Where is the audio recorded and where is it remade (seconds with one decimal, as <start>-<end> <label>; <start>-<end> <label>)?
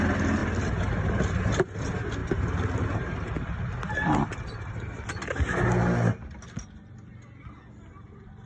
0.0-8.5 recorded